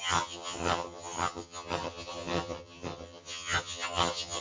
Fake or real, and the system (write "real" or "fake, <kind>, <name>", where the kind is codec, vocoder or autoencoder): fake, vocoder, HiFi-GAN